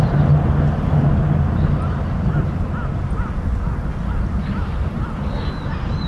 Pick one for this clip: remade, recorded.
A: recorded